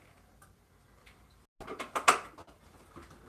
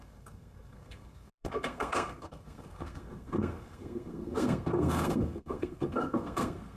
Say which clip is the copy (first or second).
second